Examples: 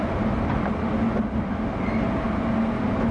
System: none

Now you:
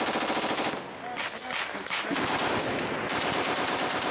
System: none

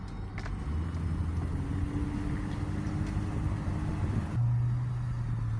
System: none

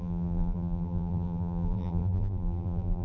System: vocoder, BigVGAN v2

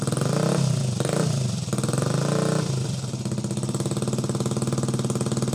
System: none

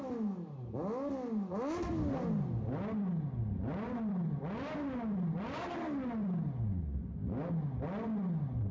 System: none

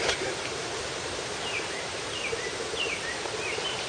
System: vocoder, BigVGAN v2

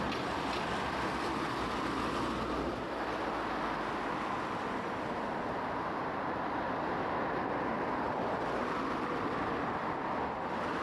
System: none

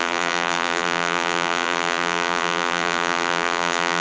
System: vocoder, BigVGAN v2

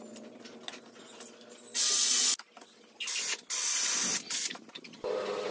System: none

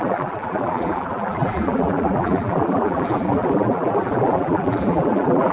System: vocoder, BigVGAN v2